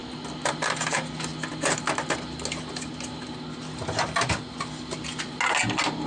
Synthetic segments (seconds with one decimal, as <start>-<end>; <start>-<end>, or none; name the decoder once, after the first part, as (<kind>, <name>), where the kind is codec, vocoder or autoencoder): none